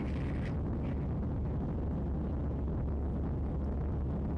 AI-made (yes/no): no